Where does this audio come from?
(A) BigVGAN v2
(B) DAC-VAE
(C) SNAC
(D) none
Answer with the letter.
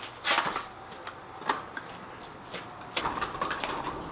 D